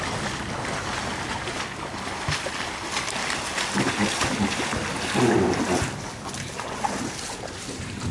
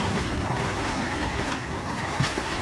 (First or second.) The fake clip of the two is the second